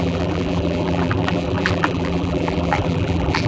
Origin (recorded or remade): remade